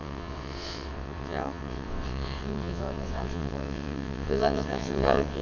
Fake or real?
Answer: fake